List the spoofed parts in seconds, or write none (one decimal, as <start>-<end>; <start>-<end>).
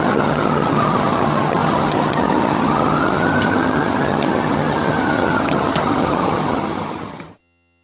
0.0-7.8